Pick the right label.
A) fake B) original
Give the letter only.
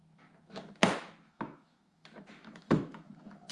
A